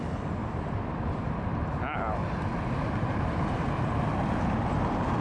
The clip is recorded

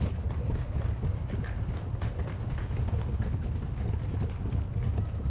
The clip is recorded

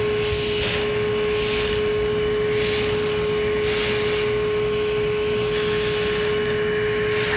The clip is recorded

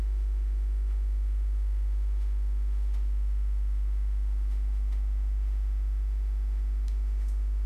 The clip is remade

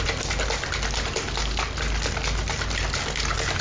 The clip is recorded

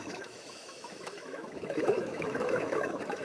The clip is remade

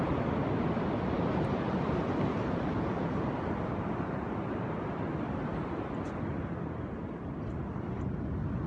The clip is recorded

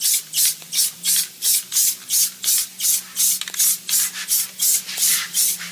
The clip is recorded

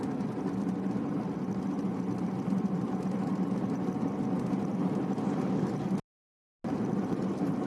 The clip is recorded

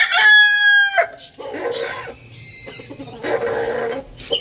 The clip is recorded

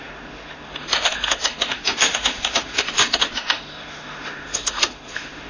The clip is remade